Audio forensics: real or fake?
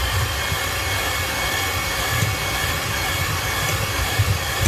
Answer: real